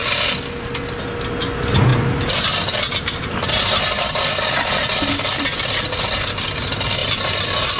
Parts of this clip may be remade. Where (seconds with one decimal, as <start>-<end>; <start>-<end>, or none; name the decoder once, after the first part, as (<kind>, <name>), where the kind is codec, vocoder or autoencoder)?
none